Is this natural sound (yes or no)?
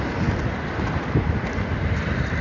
yes